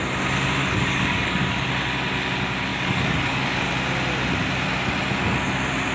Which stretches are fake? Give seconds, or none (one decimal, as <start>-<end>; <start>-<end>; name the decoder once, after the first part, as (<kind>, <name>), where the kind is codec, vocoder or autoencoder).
0.6-1.7 (codec, DAC); 2.7-3.7